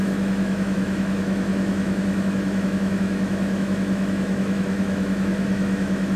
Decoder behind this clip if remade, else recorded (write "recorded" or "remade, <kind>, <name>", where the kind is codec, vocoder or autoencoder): remade, autoencoder, DAC-VAE